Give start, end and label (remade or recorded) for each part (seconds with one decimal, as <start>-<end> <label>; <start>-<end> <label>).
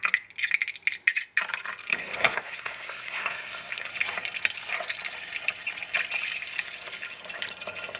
0.0-1.9 recorded; 1.9-3.9 remade; 3.9-8.0 recorded